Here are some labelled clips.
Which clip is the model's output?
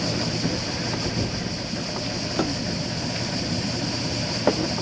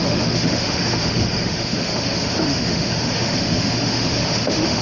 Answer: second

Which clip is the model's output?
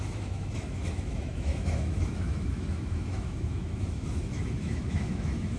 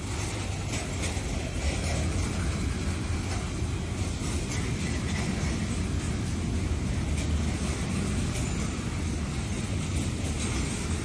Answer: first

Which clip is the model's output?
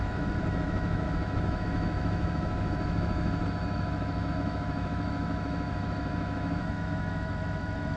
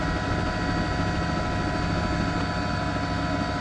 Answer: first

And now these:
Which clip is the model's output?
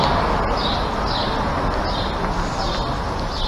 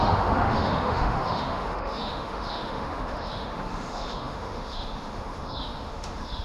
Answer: second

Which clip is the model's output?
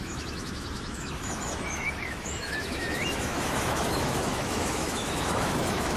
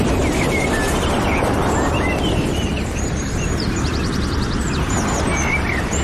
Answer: first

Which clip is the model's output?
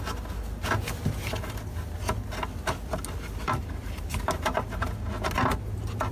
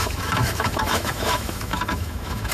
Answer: second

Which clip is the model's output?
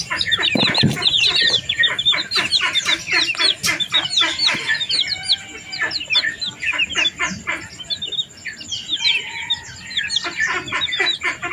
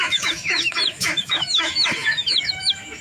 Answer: second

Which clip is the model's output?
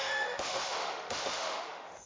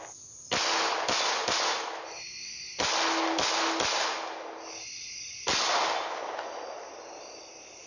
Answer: first